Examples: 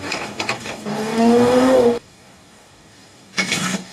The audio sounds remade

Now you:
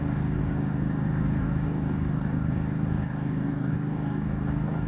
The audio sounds remade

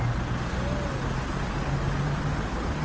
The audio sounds recorded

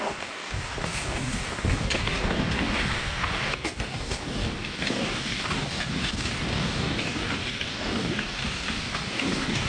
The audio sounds remade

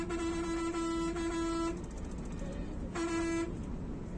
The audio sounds recorded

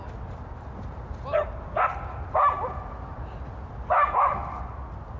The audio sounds recorded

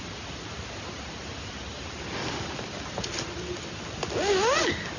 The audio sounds recorded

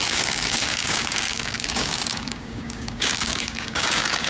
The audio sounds remade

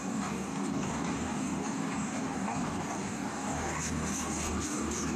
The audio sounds remade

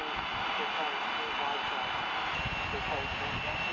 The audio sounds recorded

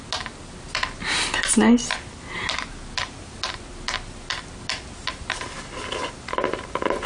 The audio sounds recorded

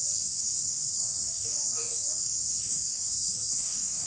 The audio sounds remade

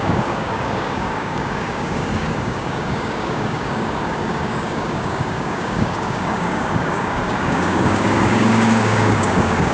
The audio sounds remade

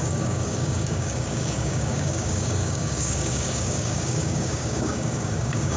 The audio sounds remade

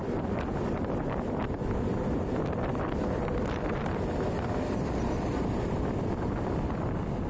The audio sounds recorded